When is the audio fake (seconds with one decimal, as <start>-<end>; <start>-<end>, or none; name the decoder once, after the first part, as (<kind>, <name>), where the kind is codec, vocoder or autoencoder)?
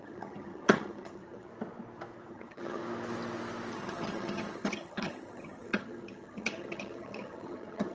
0.0-1.5 (vocoder, HiFi-GAN); 2.3-2.8; 3.7-7.9